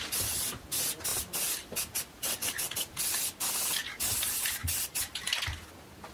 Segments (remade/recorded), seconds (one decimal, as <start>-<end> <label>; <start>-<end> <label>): 0.0-1.1 recorded; 1.1-3.0 remade; 3.0-4.6 recorded; 4.6-5.4 remade; 5.4-6.1 recorded